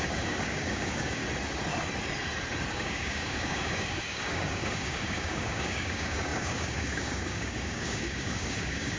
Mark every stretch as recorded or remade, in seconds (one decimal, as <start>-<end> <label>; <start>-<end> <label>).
0.0-1.2 remade; 1.2-2.7 recorded; 2.7-9.0 remade